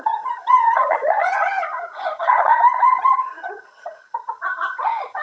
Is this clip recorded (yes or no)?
no